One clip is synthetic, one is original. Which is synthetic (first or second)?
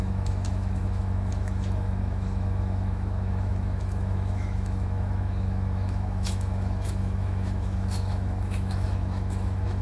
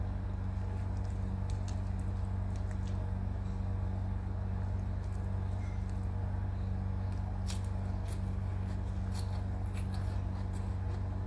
first